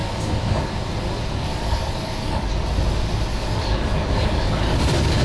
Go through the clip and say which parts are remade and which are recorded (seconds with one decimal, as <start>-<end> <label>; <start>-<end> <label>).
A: 0.0-0.7 remade; 0.7-1.5 recorded; 1.5-2.5 remade; 2.5-3.3 recorded; 3.3-5.2 remade